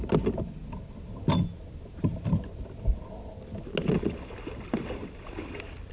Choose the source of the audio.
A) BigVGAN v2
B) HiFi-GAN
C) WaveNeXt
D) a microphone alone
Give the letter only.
D